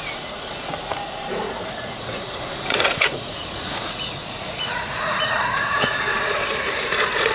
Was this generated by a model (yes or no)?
yes